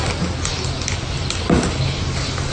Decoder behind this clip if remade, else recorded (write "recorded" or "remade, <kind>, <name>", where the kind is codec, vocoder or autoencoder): recorded